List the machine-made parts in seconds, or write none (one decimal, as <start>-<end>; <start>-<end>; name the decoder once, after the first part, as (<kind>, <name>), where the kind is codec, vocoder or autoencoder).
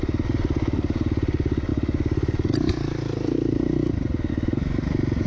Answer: none